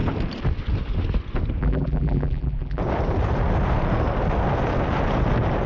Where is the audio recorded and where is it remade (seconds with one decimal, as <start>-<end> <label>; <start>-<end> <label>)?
0.0-1.6 recorded; 1.6-2.8 remade; 2.8-5.7 recorded